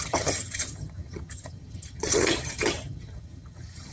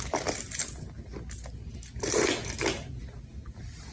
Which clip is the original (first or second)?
second